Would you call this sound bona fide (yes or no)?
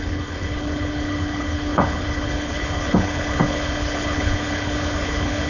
no